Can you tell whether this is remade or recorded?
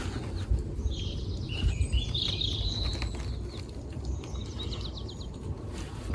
recorded